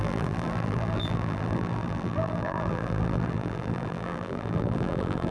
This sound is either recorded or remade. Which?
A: remade